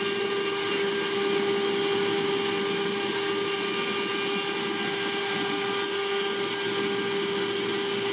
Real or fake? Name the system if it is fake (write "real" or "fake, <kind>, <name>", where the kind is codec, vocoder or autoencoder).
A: real